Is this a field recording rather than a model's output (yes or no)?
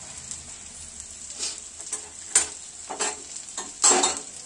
yes